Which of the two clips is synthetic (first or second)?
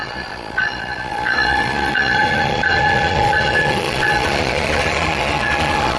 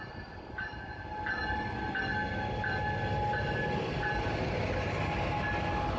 first